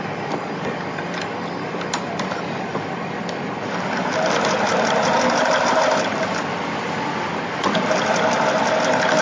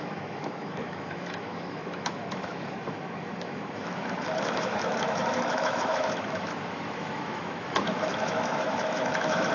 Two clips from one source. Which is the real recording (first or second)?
first